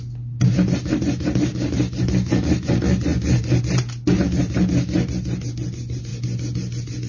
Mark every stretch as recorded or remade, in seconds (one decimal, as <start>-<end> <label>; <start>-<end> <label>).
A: 0.0-7.1 recorded